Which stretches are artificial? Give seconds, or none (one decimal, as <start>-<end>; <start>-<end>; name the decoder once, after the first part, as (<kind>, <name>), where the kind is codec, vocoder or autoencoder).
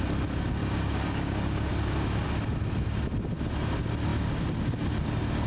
0.6-1.7 (codec, DAC)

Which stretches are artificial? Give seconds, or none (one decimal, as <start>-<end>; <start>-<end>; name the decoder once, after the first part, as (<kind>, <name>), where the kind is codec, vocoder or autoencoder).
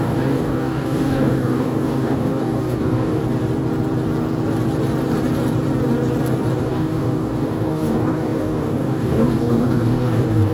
0.0-3.2 (codec, DAC); 6.6-10.5